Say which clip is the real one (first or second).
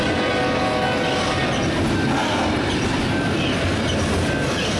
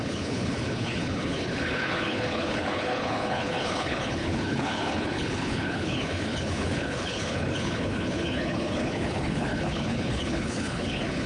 first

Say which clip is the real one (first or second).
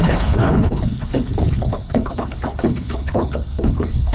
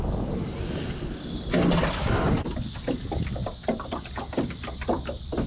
second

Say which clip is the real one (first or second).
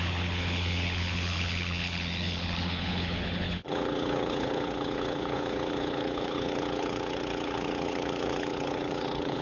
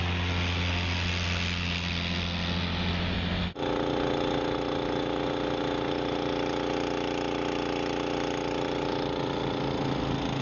second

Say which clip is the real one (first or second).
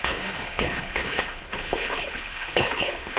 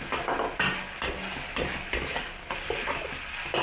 second